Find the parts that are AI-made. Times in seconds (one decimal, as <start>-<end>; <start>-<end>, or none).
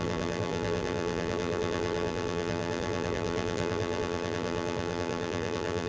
0.0-5.9